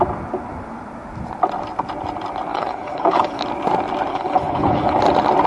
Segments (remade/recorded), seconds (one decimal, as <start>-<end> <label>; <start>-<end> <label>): 0.0-2.5 recorded; 2.5-3.4 remade; 3.4-4.1 recorded; 4.1-5.0 remade; 5.0-5.5 recorded